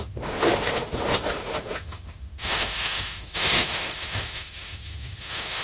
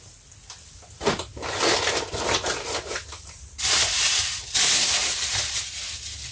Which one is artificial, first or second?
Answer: first